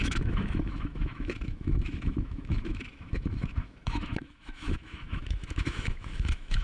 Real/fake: fake